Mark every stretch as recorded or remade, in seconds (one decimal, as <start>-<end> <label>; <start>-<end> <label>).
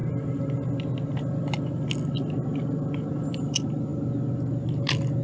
0.0-5.2 recorded